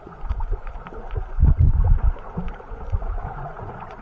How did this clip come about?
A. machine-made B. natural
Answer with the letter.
A